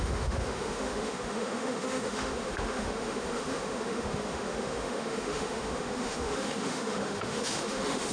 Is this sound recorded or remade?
remade